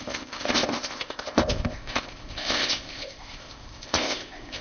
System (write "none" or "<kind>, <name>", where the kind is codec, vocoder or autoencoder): codec, ZipCodec